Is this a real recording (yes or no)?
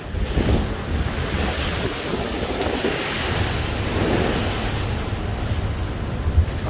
yes